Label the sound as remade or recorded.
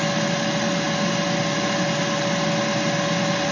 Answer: recorded